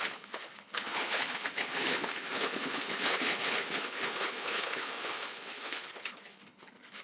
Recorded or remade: remade